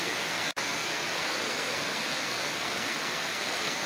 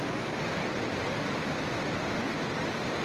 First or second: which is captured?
second